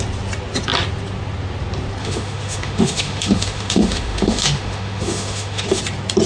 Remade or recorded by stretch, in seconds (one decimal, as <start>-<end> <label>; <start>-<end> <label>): 0.0-2.0 recorded; 2.0-5.8 remade; 5.8-6.3 recorded